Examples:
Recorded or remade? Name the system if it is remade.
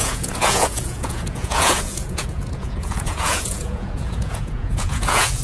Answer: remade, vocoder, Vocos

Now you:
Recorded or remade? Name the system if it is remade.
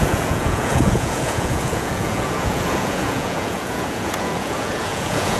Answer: remade, vocoder, Vocos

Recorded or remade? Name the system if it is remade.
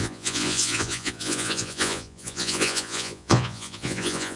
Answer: remade, vocoder, Vocos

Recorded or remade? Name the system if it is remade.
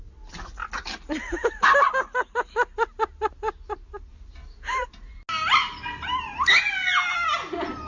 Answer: recorded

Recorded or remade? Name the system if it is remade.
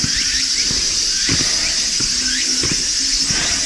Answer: recorded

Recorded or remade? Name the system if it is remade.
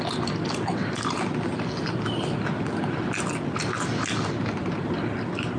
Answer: recorded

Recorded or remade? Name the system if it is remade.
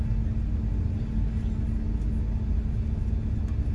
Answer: recorded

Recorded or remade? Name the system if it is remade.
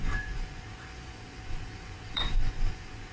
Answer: remade, vocoder, Vocos